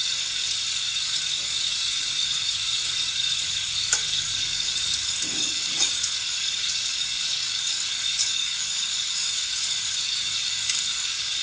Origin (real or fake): fake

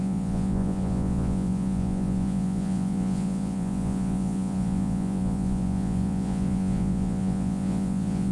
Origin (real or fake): fake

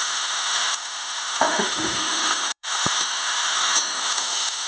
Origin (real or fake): fake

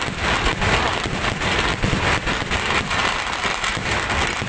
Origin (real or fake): real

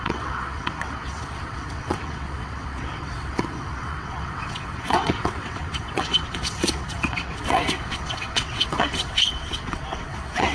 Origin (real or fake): fake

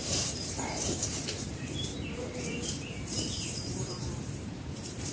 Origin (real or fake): fake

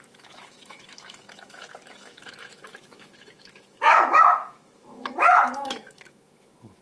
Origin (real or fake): fake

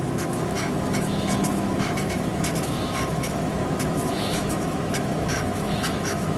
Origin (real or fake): fake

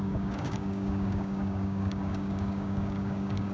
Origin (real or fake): fake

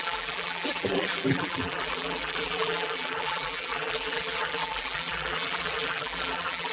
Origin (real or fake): fake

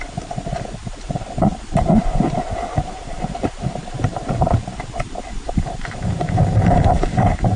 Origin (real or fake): fake